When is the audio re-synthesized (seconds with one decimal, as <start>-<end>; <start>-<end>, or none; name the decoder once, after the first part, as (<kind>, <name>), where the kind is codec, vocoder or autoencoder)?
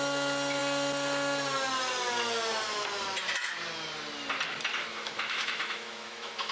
4.9-6.5 (autoencoder, DAC-VAE)